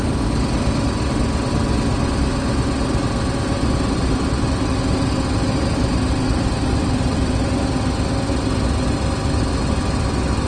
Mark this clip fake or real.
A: real